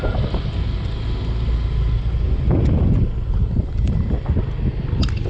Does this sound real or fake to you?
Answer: real